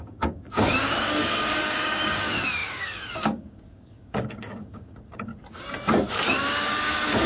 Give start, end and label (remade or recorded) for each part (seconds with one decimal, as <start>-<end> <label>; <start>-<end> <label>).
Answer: 0.0-5.3 remade; 5.3-6.3 recorded; 6.3-7.3 remade